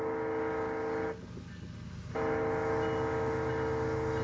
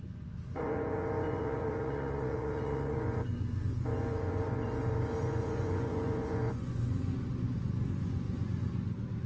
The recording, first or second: first